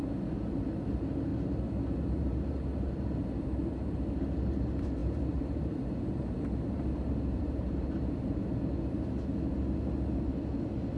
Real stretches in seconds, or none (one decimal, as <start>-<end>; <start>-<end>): 1.3-2.0; 9.5-11.0